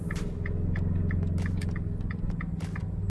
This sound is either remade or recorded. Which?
recorded